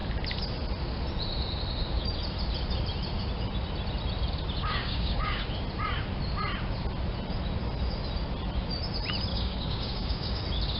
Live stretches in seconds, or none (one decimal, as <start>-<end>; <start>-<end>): 0.0-4.6; 5.4-9.3; 10.4-10.8